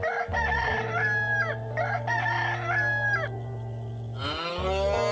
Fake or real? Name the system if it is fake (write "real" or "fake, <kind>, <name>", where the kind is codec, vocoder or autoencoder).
real